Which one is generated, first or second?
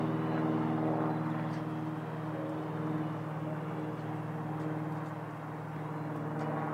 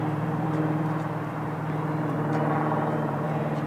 second